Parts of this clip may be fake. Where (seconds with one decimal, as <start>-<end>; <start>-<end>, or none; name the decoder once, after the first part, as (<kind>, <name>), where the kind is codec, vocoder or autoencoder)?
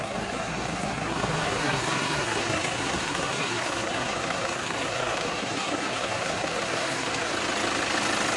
0.0-7.3 (codec, SNAC)